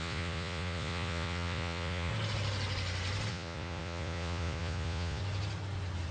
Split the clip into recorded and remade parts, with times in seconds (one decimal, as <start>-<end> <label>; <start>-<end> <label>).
0.0-2.1 remade; 2.1-3.3 recorded; 3.3-5.2 remade; 5.2-6.1 recorded